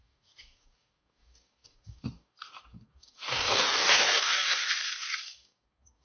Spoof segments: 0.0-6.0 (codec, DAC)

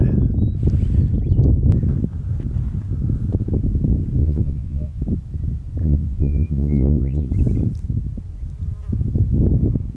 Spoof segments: 4.2-5.0 (vocoder, Vocos); 5.8-7.3